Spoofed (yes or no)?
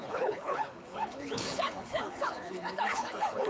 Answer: yes